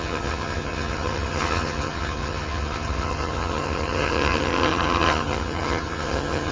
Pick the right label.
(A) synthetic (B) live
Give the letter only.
A